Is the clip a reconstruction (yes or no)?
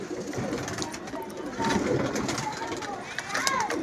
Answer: no